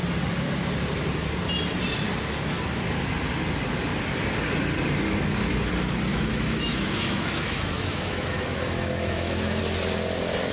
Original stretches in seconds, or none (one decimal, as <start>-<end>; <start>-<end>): 0.0-6.1; 9.6-10.5